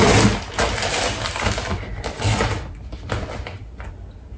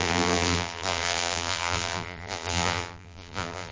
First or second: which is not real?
second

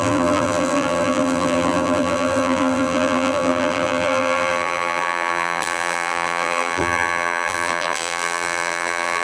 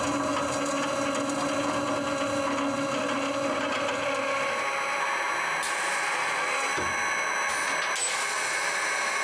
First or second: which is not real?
first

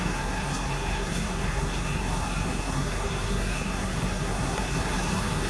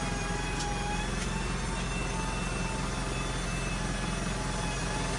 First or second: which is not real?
first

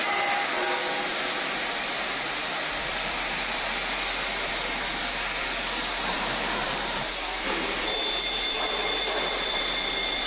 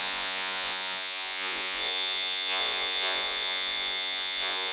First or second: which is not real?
second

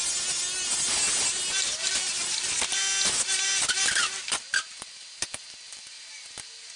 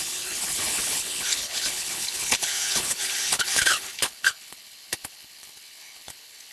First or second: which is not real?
second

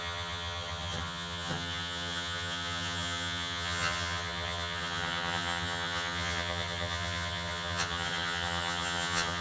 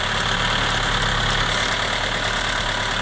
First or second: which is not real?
first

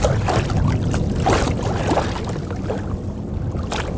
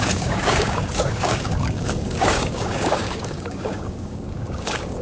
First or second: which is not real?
second